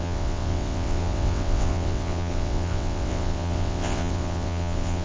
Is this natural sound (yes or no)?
no